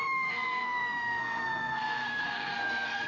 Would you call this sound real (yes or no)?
no